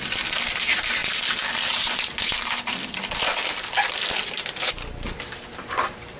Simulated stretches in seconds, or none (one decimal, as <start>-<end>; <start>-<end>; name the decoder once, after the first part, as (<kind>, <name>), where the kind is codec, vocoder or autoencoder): none